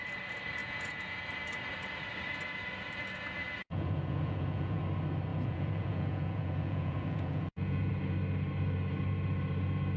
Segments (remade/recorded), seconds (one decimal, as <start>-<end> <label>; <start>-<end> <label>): 0.0-0.6 recorded; 0.6-1.2 remade; 1.2-3.6 recorded; 3.6-4.8 remade; 4.8-5.3 recorded; 5.3-7.9 remade; 7.9-10.0 recorded